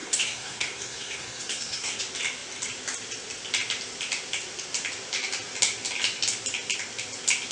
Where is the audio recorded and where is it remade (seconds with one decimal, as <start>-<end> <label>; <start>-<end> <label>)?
0.0-2.0 remade; 2.0-7.5 recorded